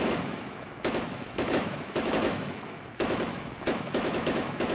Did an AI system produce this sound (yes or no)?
yes